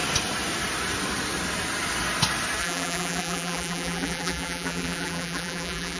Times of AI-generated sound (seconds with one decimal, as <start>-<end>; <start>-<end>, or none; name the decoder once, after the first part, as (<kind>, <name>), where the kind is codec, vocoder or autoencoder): 2.6-6.0 (vocoder, BigVGAN v2)